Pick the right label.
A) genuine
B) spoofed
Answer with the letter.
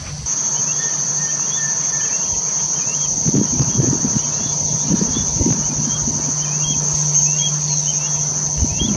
A